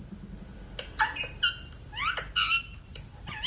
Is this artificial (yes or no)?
no